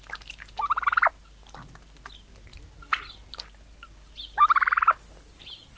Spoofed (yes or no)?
no